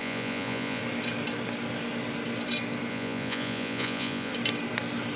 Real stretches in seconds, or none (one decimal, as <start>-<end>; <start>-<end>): 0.8-2.9; 4.3-5.2